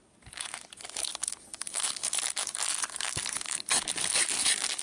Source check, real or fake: fake